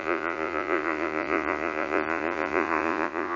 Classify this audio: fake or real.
fake